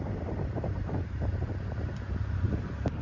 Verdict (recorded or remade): remade